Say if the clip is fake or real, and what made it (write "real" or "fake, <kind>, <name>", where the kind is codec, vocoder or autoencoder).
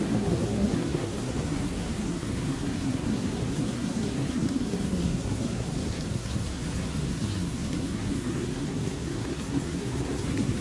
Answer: fake, codec, SNAC